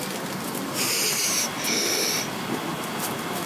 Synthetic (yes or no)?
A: no